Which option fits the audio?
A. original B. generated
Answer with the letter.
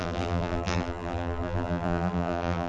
B